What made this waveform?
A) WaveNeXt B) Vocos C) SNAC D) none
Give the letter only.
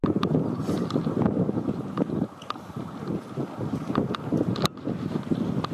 D